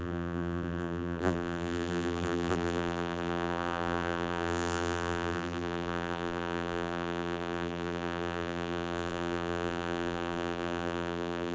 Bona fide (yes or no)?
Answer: no